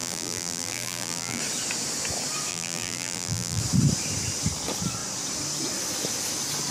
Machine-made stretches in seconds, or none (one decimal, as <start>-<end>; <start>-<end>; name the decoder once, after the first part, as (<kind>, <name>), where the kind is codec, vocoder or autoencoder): 0.0-1.4 (vocoder, BigVGAN v2); 2.5-3.6